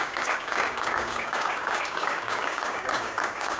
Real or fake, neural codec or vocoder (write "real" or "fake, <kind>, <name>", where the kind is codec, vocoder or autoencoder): fake, codec, DAC